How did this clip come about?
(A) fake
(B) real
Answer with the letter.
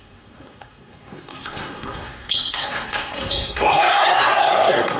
A